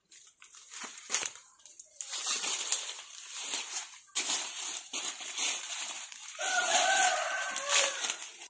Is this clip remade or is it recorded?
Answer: remade